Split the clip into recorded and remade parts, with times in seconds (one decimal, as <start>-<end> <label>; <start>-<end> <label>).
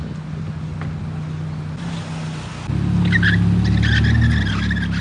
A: 0.0-5.0 recorded